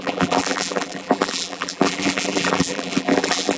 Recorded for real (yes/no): no